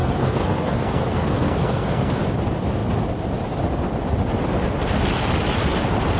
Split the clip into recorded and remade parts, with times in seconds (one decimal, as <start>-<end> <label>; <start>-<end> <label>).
0.0-2.2 remade; 2.2-6.2 recorded